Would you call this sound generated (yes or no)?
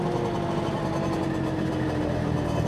yes